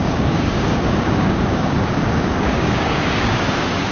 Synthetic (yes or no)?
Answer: yes